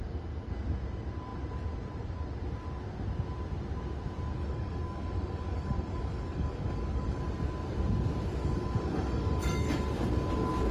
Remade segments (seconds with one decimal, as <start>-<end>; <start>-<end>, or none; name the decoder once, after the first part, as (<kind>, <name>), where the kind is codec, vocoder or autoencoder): 4.4-7.2 (codec, DAC); 8.4-9.9